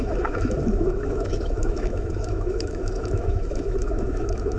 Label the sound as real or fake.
fake